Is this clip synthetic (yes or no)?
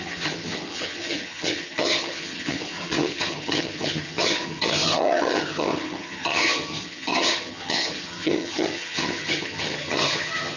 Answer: yes